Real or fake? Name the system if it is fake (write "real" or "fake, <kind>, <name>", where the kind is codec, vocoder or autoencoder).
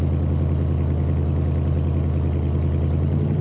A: real